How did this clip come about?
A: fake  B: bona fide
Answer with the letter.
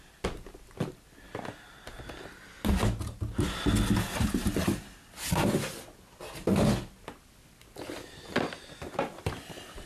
B